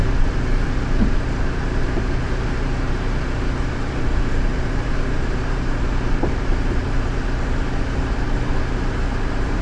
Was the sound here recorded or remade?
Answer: remade